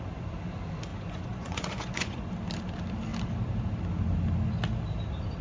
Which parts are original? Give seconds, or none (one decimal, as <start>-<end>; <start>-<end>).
0.0-0.9; 2.3-5.4